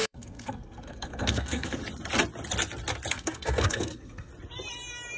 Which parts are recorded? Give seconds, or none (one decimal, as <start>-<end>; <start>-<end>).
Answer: 1.8-3.1; 4.3-5.2